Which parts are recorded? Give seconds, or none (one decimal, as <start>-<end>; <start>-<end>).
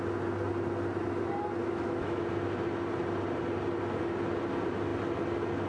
0.0-1.6; 2.2-5.7